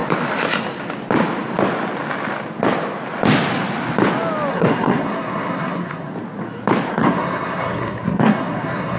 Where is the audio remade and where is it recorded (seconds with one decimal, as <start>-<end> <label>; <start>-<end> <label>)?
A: 0.0-4.5 recorded; 4.5-6.1 remade; 6.1-6.9 recorded; 6.9-9.0 remade